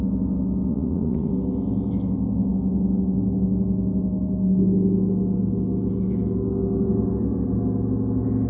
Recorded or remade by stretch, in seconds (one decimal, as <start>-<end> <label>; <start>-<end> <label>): 0.0-0.7 recorded; 0.7-1.3 remade; 1.3-8.5 recorded

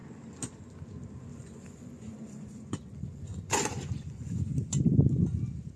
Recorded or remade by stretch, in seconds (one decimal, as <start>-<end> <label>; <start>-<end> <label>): 0.0-1.3 recorded; 1.3-4.8 remade; 4.8-5.8 recorded